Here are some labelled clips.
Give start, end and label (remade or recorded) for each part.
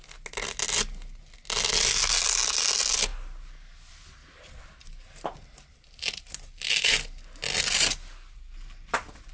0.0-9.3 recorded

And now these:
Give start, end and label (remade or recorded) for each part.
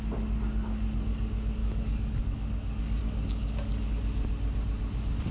0.0-1.6 recorded; 1.6-3.9 remade; 3.9-5.3 recorded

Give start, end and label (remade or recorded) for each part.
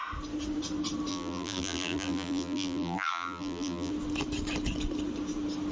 0.0-1.1 recorded; 1.1-3.9 remade; 3.9-5.7 recorded